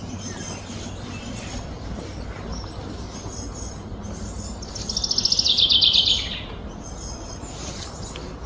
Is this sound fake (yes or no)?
no